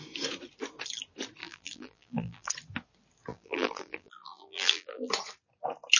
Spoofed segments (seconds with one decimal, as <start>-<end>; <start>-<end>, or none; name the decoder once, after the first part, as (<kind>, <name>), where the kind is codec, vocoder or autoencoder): 1.4-2.5 (vocoder, BigVGAN v2); 3.3-5.1